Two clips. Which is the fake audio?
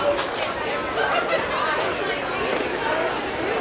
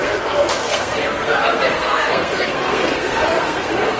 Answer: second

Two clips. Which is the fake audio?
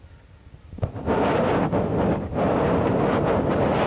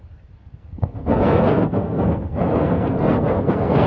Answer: second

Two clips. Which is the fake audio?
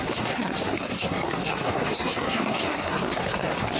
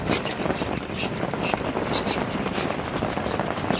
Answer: first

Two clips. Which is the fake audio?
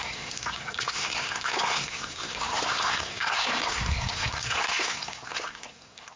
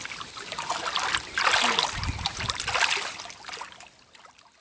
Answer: first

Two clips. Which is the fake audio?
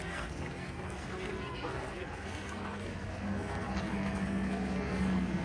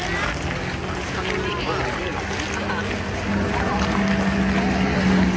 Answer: first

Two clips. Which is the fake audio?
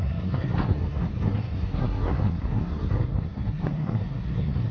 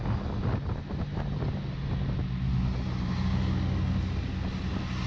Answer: first